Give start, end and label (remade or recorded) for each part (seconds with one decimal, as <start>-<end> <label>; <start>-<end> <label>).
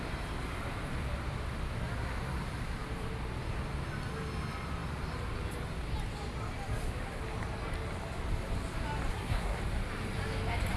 0.0-9.1 recorded; 9.1-9.6 remade; 9.6-10.8 recorded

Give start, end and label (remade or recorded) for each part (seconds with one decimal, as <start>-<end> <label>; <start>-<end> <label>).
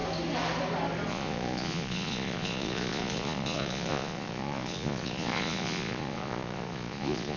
0.0-1.1 recorded; 1.1-7.4 remade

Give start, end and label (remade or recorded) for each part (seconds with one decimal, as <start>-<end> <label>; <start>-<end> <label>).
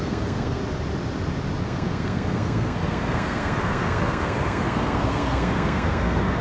0.0-0.6 remade; 0.6-1.6 recorded; 1.6-6.4 remade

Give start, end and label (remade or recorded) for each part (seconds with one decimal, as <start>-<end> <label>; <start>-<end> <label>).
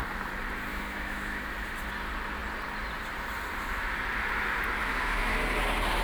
0.0-0.7 recorded; 0.7-1.5 remade; 1.5-4.8 recorded; 4.8-5.4 remade; 5.4-6.0 recorded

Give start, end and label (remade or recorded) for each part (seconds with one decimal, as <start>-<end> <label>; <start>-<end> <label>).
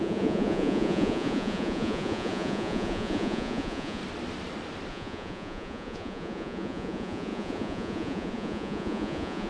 0.0-4.0 remade; 4.0-4.9 recorded; 4.9-9.5 remade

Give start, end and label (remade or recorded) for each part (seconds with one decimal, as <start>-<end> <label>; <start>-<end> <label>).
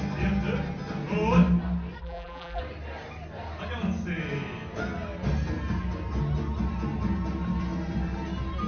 0.0-2.0 recorded; 2.0-2.6 remade; 2.6-8.7 recorded